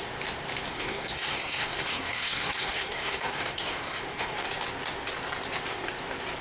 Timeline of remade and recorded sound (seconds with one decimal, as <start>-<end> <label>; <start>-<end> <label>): 0.0-0.7 recorded; 0.7-4.5 remade; 4.5-6.4 recorded